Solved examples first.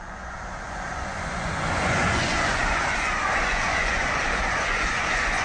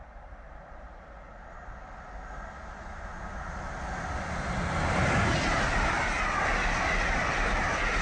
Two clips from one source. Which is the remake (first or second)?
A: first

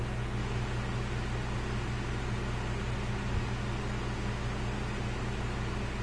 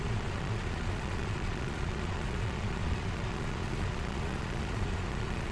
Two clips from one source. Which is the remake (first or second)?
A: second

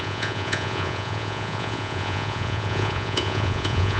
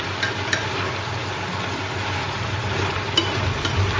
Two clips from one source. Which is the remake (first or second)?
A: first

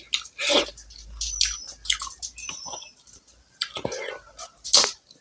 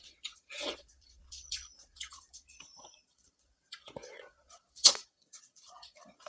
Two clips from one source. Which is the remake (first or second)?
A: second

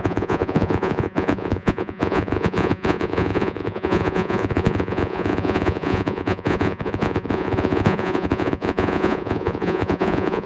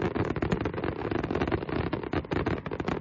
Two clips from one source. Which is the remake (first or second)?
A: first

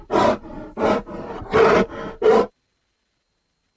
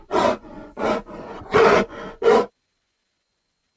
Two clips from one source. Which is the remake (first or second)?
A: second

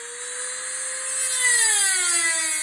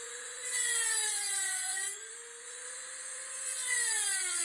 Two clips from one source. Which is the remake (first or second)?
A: second